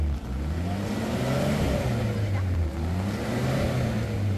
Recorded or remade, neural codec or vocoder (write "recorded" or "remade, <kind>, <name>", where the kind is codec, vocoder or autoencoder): recorded